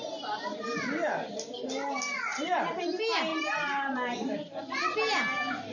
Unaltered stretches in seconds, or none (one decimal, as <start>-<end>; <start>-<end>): 0.0-2.3; 2.8-3.3; 4.6-5.7